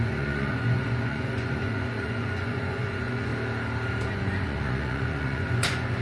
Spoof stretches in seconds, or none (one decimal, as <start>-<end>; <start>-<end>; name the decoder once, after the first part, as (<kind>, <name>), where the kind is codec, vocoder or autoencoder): 0.0-3.3 (vocoder, Vocos); 4.1-6.0